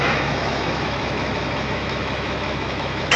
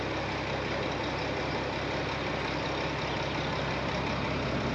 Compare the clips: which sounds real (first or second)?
second